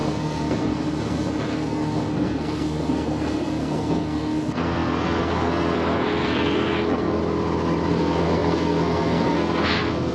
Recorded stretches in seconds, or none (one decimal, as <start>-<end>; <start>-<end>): 7.2-7.9